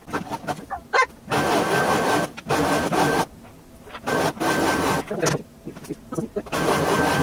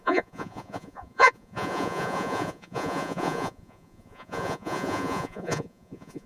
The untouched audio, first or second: first